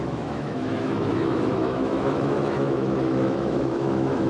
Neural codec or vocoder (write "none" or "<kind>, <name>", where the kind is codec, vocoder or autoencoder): autoencoder, DAC-VAE